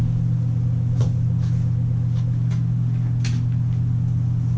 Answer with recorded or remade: recorded